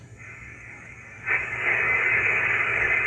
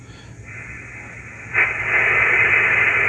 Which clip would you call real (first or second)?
second